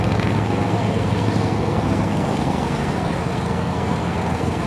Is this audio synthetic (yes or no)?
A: yes